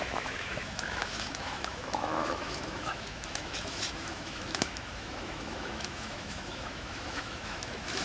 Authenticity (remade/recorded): remade